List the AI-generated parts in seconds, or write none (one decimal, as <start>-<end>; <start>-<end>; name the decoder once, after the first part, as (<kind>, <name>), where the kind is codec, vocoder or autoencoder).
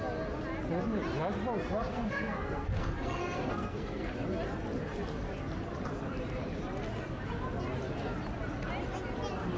1.9-4.1 (codec, SNAC)